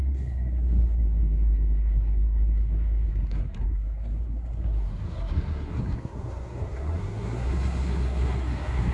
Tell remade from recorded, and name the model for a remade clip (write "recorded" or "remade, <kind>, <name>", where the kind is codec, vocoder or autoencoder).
remade, codec, SNAC